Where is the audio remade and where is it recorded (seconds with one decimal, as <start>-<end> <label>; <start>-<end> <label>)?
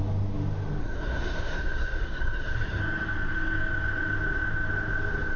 0.0-0.8 recorded; 0.8-2.8 remade; 2.8-5.4 recorded